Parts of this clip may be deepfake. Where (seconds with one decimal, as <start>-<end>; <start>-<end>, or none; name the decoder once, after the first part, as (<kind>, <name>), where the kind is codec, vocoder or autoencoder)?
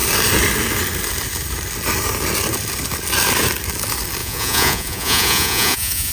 4.2-6.1 (vocoder, Vocos)